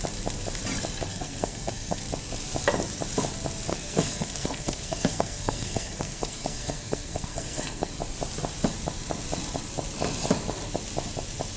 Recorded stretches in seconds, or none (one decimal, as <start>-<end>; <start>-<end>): 0.0-1.1; 2.0-3.7; 7.9-11.6